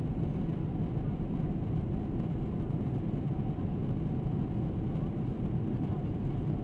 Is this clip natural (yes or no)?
yes